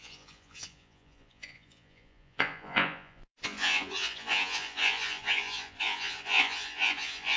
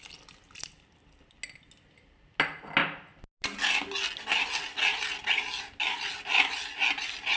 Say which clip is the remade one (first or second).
first